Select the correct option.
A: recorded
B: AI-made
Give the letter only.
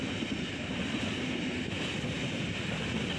A